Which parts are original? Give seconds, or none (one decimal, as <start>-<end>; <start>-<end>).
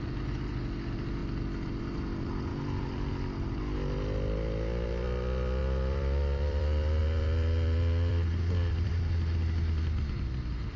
0.0-2.5; 3.1-5.6; 7.0-8.1; 8.9-10.8